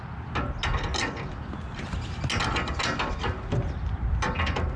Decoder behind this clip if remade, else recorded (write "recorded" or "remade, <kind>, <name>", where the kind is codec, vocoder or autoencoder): recorded